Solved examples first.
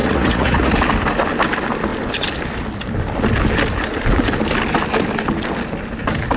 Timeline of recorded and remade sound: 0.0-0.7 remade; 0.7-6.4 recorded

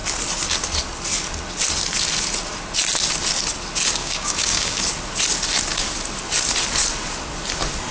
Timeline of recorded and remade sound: 0.0-4.0 recorded; 4.0-4.8 remade; 4.8-7.9 recorded

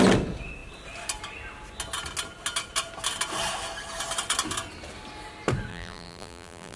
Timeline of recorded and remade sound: 0.0-5.7 recorded; 5.7-6.8 remade